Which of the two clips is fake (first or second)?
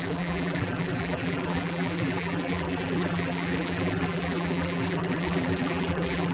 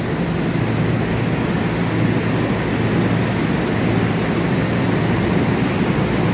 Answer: first